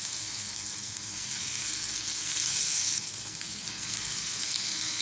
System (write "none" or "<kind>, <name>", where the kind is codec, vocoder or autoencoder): codec, SNAC